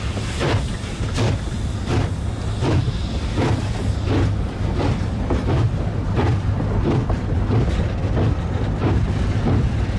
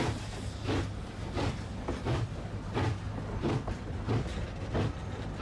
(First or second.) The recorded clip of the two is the second